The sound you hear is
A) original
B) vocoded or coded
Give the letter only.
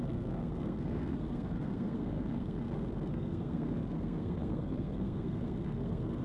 B